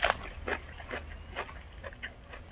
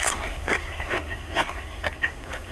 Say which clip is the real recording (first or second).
first